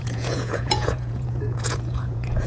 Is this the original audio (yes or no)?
no